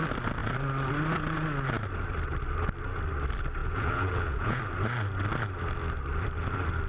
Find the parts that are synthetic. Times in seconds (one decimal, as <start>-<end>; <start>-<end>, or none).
3.6-4.6